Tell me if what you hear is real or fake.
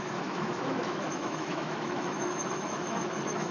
fake